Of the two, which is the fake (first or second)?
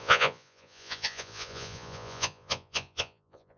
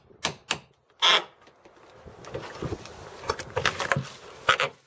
first